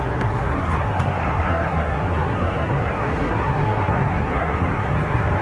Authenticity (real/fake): fake